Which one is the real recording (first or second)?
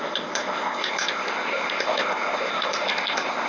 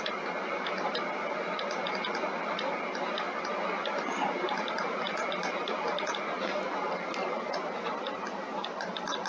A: second